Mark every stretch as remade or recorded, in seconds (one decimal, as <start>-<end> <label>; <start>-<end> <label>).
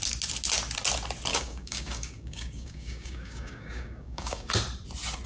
0.0-1.3 recorded; 1.3-4.5 remade; 4.5-5.3 recorded